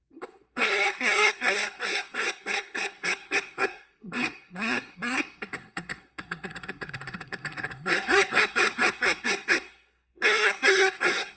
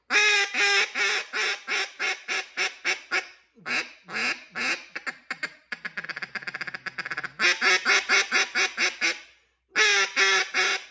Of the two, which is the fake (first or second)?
first